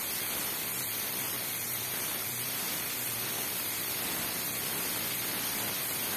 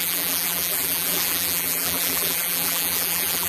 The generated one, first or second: second